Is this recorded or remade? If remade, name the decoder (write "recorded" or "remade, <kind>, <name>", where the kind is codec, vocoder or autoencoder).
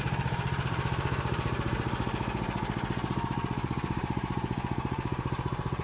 remade, vocoder, BigVGAN v2